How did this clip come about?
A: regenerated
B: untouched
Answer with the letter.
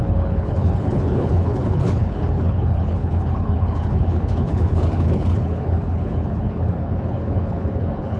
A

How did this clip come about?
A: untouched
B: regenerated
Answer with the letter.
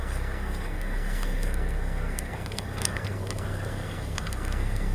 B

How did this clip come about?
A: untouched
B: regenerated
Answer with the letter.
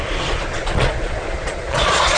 B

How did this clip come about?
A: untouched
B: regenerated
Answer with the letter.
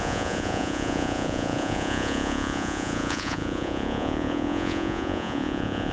B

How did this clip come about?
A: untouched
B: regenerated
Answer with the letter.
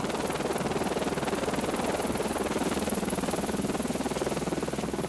A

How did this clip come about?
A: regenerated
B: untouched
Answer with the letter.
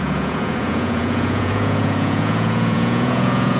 A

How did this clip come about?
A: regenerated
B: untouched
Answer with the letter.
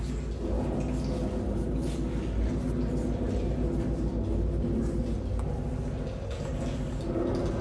B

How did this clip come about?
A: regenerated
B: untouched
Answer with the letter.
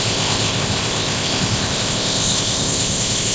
A